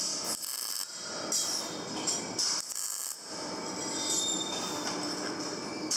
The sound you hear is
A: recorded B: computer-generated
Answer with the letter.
A